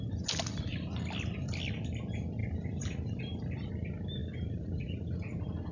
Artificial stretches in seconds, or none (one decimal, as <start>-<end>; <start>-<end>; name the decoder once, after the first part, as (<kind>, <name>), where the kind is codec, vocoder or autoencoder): 2.4-3.7 (vocoder, BigVGAN v2); 4.2-5.1